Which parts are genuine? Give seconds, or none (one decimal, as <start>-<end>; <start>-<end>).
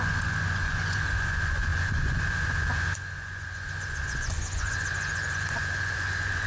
none